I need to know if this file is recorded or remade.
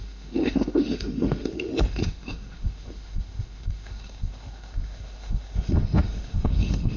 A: remade